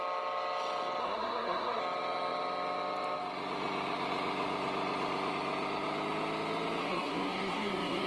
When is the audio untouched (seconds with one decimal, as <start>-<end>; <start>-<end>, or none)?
0.0-1.0; 1.8-6.8